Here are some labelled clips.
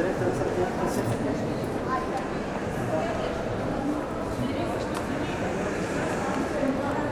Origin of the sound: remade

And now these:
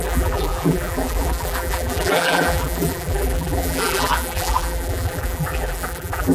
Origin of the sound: remade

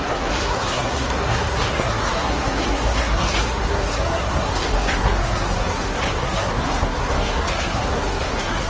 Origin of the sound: remade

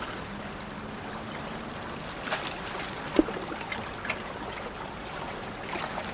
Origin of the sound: recorded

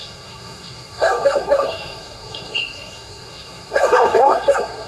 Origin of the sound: remade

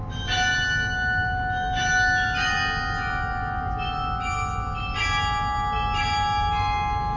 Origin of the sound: recorded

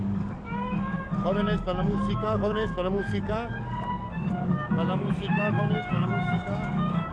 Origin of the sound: remade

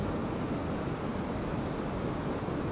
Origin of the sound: recorded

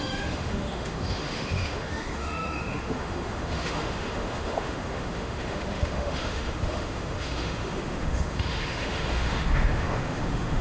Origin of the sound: remade